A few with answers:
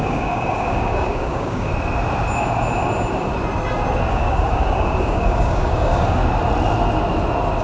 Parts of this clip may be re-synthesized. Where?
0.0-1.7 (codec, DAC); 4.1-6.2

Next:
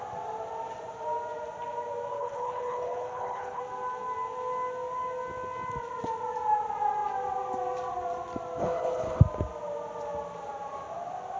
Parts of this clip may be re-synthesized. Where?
2.1-3.6 (codec, HILCodec); 8.6-9.2

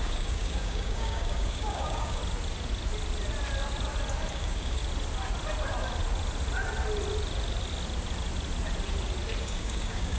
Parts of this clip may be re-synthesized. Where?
0.0-2.2 (codec, DAC); 4.3-4.8; 9.4-10.2

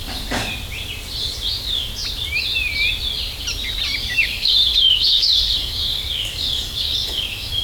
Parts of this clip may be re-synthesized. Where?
0.0-0.5 (codec, DAC); 1.5-1.9; 4.0-7.6

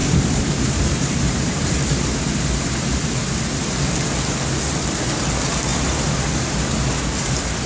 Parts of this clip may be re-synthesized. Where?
0.0-2.2 (vocoder, BigVGAN v2)

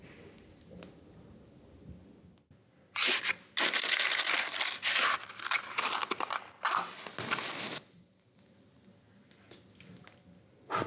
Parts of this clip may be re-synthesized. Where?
none

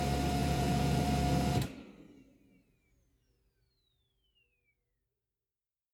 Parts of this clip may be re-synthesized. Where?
0.4-1.0 (vocoder, Vocos)

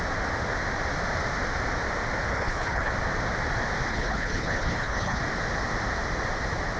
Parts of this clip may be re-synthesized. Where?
2.3-2.9 (codec, HILCodec); 3.9-5.2